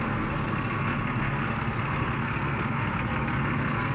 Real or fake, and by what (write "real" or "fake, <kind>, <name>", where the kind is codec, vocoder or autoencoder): fake, codec, SNAC